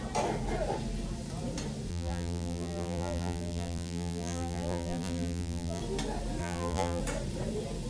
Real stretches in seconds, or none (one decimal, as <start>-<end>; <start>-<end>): 0.0-1.9; 5.8-6.4; 7.0-7.9